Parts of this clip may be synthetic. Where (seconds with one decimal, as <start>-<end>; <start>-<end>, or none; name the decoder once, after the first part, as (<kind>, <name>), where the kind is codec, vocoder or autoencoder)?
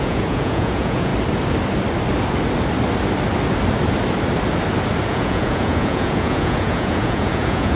0.0-1.1 (vocoder, Vocos); 5.1-7.8